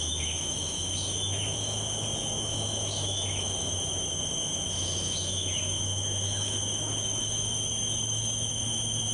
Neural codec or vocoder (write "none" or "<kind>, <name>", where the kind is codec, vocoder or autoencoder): autoencoder, DAC-VAE